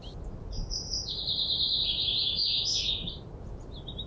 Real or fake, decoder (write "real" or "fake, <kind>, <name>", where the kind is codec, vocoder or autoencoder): real